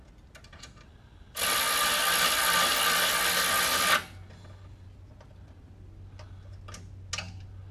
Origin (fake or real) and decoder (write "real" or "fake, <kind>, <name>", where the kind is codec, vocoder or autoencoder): real